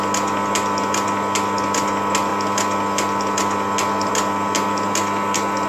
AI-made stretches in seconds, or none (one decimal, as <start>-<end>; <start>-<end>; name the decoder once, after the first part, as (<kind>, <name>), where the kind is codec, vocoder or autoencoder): none